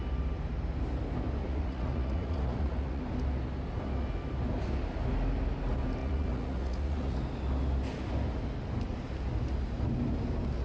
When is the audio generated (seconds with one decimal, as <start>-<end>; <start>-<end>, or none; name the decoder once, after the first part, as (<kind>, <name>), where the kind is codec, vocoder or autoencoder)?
1.4-3.0 (vocoder, Vocos); 6.0-7.2

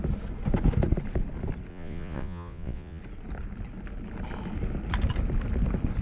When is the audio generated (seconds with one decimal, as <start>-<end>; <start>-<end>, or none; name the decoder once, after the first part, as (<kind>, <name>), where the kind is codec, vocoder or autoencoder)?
1.7-3.0 (vocoder, Vocos)